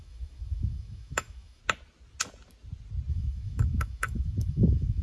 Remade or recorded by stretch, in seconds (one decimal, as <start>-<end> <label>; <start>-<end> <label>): 0.0-1.6 remade; 1.6-3.1 recorded; 3.1-5.0 remade